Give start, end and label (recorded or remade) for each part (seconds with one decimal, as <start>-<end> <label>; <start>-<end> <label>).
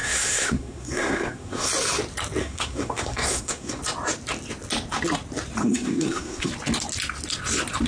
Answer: 0.0-1.7 remade; 1.7-2.4 recorded; 2.4-3.8 remade; 3.8-5.6 recorded; 5.6-6.5 remade; 6.5-7.9 recorded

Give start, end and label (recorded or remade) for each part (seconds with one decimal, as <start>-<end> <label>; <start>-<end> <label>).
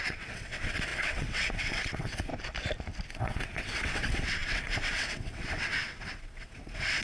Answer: 0.0-2.3 remade; 2.3-3.1 recorded; 3.1-7.0 remade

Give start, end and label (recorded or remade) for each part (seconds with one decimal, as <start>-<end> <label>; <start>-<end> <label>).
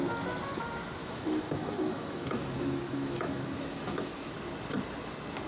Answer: 0.0-1.0 recorded; 1.0-4.3 remade; 4.3-5.5 recorded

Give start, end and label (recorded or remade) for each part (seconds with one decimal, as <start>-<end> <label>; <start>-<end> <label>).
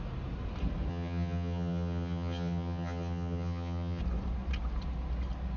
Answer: 0.0-0.9 recorded; 0.9-4.0 remade; 4.0-5.6 recorded